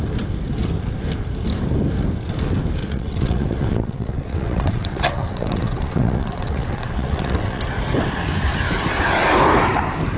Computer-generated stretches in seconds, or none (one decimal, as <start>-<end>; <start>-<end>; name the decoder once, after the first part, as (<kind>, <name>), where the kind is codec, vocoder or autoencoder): 2.8-7.6 (vocoder, WaveNeXt)